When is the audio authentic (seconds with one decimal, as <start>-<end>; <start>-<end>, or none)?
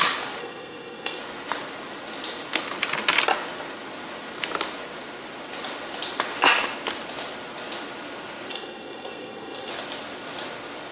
0.0-0.4; 1.2-8.5; 9.7-10.9